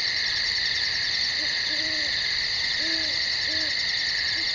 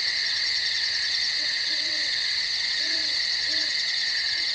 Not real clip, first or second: second